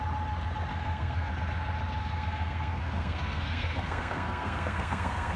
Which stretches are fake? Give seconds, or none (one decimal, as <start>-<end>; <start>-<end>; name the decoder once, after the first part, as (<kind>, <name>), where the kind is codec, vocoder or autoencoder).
0.7-1.3 (codec, SNAC); 2.0-5.4